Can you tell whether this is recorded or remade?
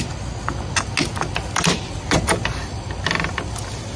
recorded